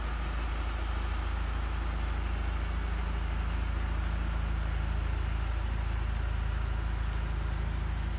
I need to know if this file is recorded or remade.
recorded